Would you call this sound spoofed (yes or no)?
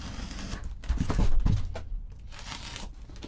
no